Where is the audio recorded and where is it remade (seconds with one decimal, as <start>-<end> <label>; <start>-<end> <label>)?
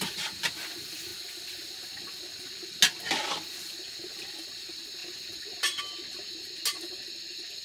0.0-7.6 recorded